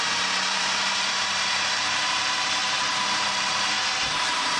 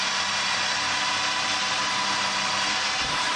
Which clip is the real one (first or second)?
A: second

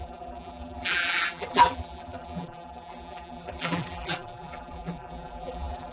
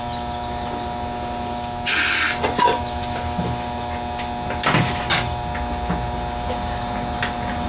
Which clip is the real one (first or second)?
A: second